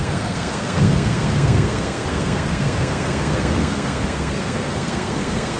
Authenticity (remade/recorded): remade